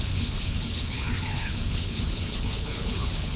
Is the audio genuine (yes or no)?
no